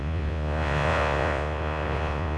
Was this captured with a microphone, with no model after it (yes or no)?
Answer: no